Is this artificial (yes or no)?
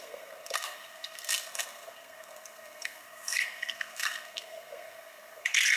yes